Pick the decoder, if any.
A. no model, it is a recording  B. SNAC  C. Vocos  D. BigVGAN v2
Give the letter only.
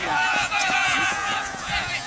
C